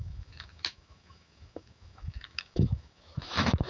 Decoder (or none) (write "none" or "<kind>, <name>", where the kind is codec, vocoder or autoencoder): autoencoder, DAC-VAE